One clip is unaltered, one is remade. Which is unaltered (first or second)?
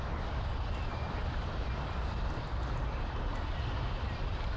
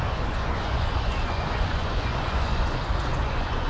first